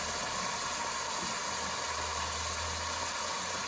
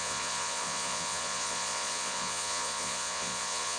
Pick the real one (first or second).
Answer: first